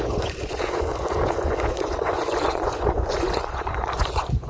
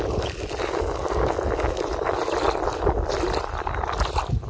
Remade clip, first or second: first